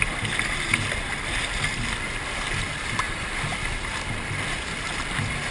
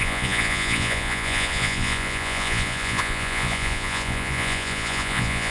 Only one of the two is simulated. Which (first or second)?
second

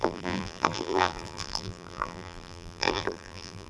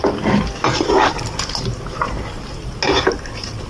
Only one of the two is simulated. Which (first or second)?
first